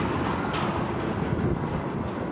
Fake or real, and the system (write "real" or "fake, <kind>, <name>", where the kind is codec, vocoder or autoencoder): real